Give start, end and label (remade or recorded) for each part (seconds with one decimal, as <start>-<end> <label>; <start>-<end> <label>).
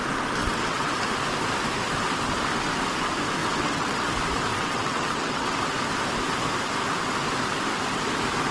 0.0-0.4 recorded; 0.4-0.9 remade; 0.9-3.4 recorded; 3.4-4.1 remade; 4.1-4.5 recorded; 4.5-5.6 remade; 5.6-8.5 recorded